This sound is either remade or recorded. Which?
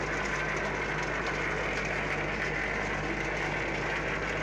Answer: recorded